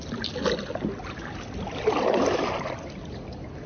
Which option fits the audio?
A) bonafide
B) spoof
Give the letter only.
A